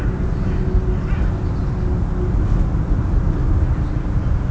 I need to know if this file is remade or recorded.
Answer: recorded